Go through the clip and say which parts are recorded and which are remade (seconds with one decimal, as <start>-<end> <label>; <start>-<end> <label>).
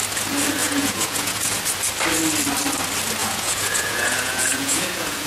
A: 0.0-0.6 recorded; 0.6-1.6 remade; 1.6-3.2 recorded; 3.2-5.3 remade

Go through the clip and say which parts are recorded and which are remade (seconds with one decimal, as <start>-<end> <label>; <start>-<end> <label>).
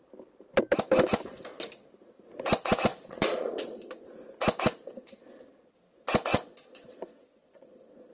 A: 0.0-2.9 recorded; 2.9-4.0 remade; 4.0-6.3 recorded; 6.3-8.1 remade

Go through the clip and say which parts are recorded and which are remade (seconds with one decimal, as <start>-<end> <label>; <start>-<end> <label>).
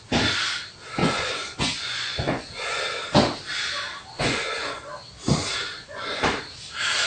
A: 0.0-1.0 recorded; 1.0-2.8 remade; 2.8-4.1 recorded; 4.1-4.8 remade; 4.8-5.6 recorded; 5.6-6.2 remade; 6.2-7.1 recorded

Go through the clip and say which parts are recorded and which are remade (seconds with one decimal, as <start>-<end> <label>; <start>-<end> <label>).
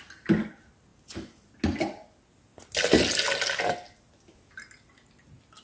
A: 0.0-5.6 recorded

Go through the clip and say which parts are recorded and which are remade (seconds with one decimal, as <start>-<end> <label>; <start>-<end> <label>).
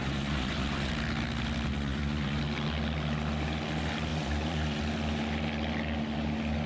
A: 0.0-0.9 remade; 0.9-1.7 recorded; 1.7-2.4 remade; 2.4-4.1 recorded; 4.1-4.8 remade; 4.8-6.7 recorded